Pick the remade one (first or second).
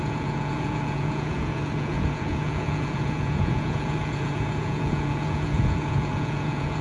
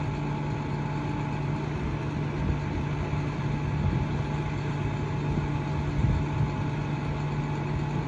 first